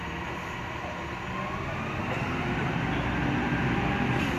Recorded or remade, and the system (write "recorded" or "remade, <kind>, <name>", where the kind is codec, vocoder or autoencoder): recorded